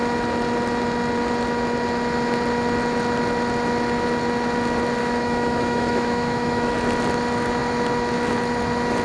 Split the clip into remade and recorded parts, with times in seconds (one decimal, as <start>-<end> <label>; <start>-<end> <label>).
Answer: 0.0-5.0 recorded; 5.0-6.7 remade; 6.7-9.0 recorded